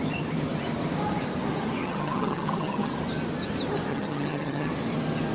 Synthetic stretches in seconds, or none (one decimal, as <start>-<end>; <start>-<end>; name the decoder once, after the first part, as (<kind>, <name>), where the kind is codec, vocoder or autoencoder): 1.8-2.9 (vocoder, HiFi-GAN); 3.9-4.7